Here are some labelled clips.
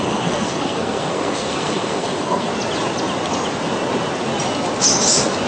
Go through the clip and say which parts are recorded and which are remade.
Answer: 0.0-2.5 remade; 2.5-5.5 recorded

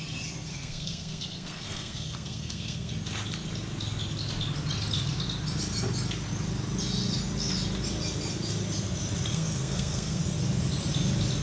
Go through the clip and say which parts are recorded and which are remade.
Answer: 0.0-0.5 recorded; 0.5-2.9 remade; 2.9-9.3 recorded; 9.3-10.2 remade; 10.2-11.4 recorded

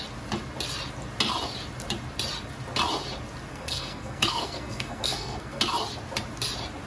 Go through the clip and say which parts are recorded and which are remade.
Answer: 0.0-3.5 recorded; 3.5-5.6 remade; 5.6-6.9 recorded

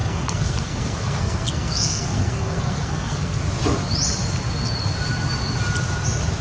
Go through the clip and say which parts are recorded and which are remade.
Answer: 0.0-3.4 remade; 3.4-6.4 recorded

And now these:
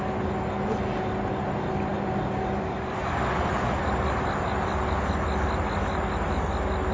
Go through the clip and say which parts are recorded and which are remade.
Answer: 0.0-6.9 recorded

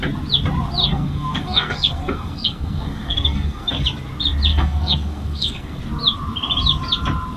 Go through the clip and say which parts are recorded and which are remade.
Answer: 0.0-0.8 recorded; 0.8-3.8 remade; 3.8-4.5 recorded; 4.5-5.8 remade; 5.8-7.4 recorded